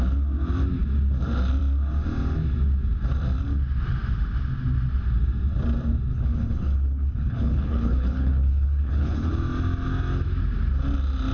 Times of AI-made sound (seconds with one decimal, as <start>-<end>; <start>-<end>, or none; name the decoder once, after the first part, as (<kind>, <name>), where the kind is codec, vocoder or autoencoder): 6.1-9.3 (codec, HILCodec)

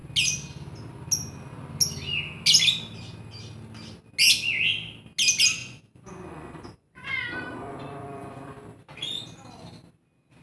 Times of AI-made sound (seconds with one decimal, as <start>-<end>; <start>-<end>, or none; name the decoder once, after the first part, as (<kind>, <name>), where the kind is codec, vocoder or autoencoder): 5.6-8.5 (vocoder, Vocos)

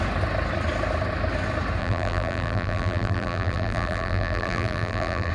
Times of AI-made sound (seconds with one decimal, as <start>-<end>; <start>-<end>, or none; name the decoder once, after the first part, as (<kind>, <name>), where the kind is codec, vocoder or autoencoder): 1.8-5.3 (vocoder, BigVGAN v2)

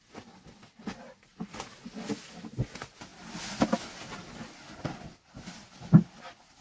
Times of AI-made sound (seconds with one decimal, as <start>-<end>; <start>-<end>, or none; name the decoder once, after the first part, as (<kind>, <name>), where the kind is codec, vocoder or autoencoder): none

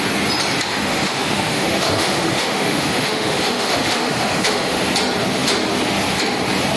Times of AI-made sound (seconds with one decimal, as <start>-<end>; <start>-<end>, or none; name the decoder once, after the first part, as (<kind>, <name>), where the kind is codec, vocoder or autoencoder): 0.7-4.8 (autoencoder, DAC-VAE)